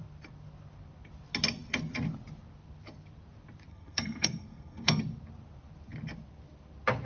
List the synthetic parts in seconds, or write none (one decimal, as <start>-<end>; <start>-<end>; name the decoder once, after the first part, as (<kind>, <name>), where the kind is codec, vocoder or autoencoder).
3.7-5.0 (codec, SNAC)